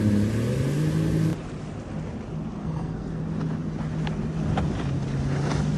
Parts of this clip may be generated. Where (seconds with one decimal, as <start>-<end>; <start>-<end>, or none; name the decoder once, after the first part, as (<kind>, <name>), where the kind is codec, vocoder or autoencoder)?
2.6-3.2 (codec, SNAC)